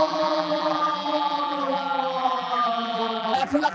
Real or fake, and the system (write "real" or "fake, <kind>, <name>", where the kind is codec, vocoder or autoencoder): fake, vocoder, BigVGAN v2